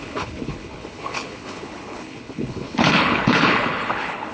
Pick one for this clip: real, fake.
fake